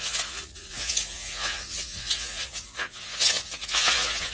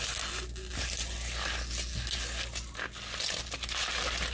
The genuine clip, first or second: second